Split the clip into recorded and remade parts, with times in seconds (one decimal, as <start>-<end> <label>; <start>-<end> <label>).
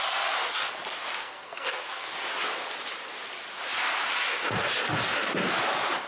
0.0-1.2 recorded; 1.2-2.1 remade; 2.1-6.1 recorded